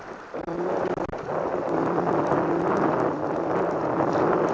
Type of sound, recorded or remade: recorded